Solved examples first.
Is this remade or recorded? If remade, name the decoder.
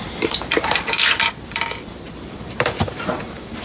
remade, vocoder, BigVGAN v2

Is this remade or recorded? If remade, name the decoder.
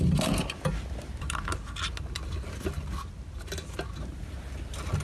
recorded